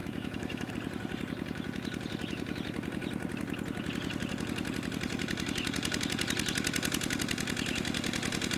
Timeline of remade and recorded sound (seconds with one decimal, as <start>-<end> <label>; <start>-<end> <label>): 0.0-0.7 remade; 0.7-8.6 recorded